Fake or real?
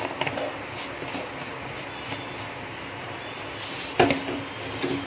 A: real